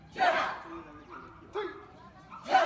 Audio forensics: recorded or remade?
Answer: remade